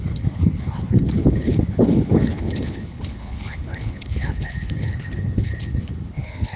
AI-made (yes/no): yes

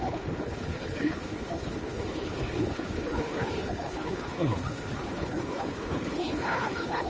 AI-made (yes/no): yes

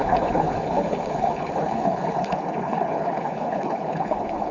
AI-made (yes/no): yes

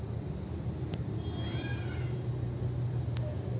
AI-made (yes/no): no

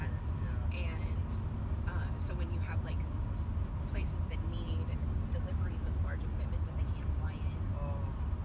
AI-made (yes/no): no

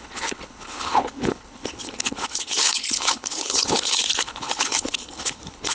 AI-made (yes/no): yes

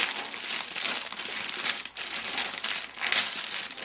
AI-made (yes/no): no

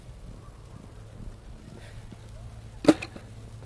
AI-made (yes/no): no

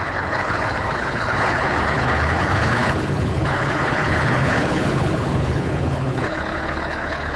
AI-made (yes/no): yes